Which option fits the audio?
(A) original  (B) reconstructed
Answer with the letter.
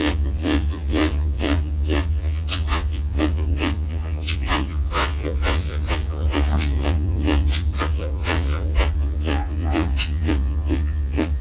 B